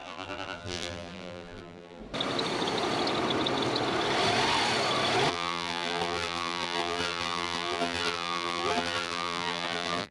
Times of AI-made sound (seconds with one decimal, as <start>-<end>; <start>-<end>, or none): 0.0-2.0; 5.3-10.1